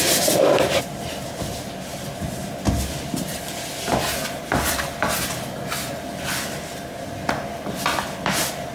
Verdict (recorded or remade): recorded